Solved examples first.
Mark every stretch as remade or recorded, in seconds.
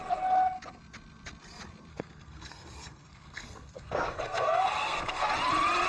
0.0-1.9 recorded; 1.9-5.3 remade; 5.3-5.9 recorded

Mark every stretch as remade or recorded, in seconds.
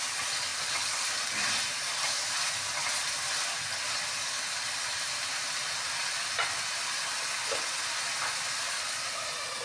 0.0-9.6 recorded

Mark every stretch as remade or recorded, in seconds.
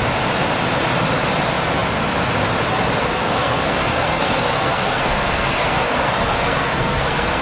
0.0-3.0 recorded; 3.0-7.4 remade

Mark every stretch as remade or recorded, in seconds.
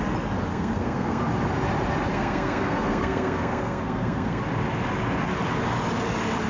0.0-0.5 recorded; 0.5-1.2 remade; 1.2-2.1 recorded; 2.1-4.4 remade; 4.4-6.5 recorded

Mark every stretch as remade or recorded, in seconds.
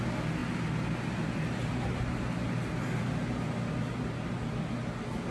0.0-5.3 recorded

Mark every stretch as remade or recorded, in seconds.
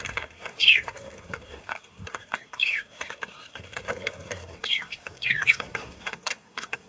0.0-6.9 remade